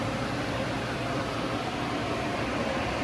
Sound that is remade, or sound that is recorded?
recorded